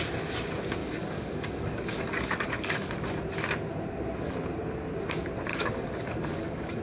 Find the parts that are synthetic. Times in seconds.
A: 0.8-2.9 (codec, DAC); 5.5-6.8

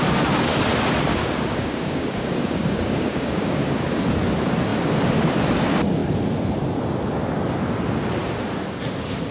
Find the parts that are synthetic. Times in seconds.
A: 1.1-4.0 (codec, DAC)